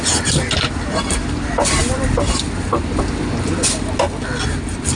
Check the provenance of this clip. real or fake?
real